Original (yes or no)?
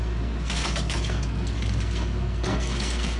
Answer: no